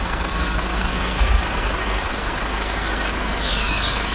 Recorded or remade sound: remade